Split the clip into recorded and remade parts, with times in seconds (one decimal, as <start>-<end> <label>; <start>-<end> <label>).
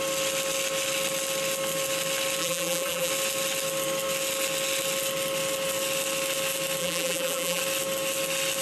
0.0-2.4 recorded; 2.4-3.1 remade; 3.1-6.8 recorded; 6.8-7.6 remade; 7.6-8.6 recorded